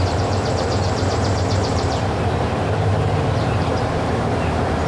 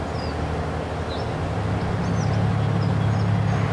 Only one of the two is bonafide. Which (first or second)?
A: second